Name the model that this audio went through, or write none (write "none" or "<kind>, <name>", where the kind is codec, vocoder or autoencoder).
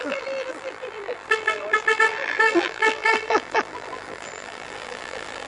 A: vocoder, BigVGAN v2